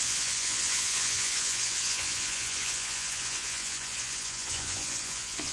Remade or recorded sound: remade